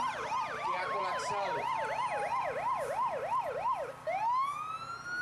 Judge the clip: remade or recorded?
recorded